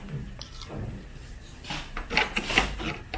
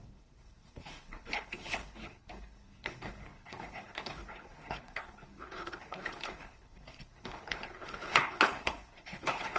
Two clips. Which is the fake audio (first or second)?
second